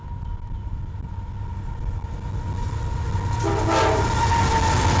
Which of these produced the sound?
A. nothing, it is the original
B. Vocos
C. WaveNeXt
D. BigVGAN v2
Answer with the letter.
A